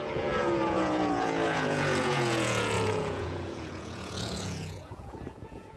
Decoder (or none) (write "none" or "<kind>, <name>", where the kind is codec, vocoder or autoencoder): vocoder, Vocos